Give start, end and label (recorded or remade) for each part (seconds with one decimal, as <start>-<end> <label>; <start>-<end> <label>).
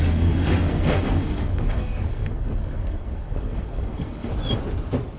0.0-4.3 remade; 4.3-5.2 recorded